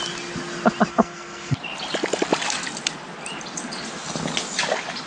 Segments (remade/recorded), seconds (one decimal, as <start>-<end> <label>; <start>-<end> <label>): 0.0-0.9 recorded; 0.9-1.6 remade; 1.6-5.1 recorded